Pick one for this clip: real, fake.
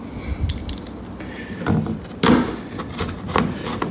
real